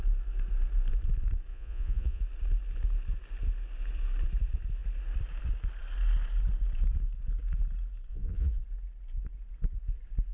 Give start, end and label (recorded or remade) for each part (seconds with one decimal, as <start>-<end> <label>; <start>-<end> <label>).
0.0-1.5 recorded; 1.5-2.2 remade; 2.2-8.1 recorded; 8.1-8.6 remade; 8.6-10.3 recorded